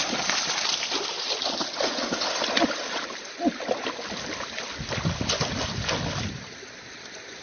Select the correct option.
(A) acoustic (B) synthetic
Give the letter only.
A